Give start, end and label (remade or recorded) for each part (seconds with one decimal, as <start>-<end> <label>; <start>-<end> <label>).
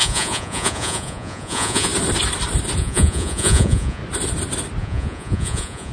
0.0-1.9 remade; 1.9-2.8 recorded; 2.8-4.0 remade; 4.0-4.8 recorded; 4.8-5.9 remade